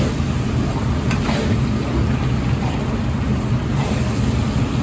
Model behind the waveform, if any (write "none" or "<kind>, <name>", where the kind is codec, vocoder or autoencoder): none